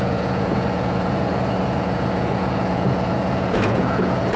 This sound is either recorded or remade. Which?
remade